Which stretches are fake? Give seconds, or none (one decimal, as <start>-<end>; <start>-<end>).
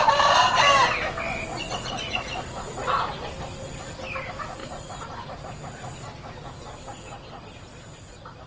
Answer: 1.5-2.9